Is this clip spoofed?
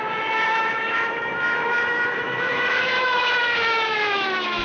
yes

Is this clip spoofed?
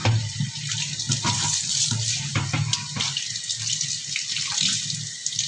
no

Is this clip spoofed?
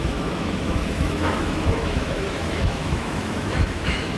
yes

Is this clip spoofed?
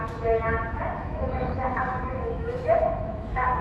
yes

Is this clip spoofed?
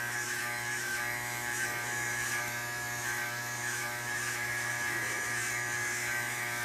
yes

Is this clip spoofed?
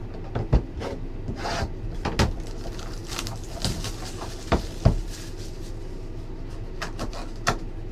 no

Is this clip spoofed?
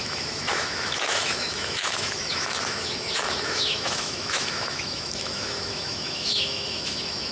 yes